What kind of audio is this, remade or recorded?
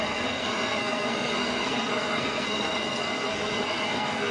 remade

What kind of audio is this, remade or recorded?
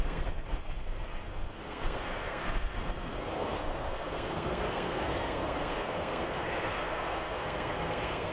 remade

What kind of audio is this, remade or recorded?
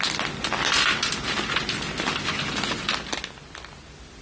recorded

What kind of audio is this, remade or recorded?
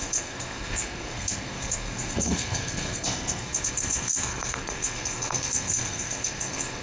remade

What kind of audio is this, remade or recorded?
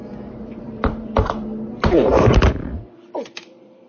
remade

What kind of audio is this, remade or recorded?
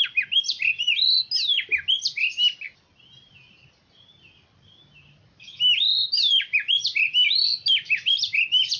recorded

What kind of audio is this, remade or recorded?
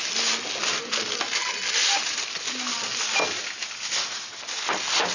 recorded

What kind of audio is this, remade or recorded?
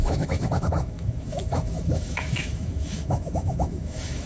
remade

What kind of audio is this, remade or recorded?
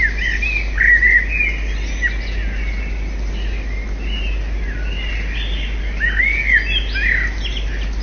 recorded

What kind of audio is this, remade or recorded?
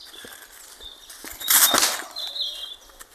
recorded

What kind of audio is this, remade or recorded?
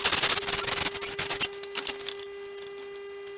recorded